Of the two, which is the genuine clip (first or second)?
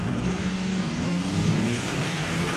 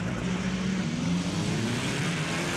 second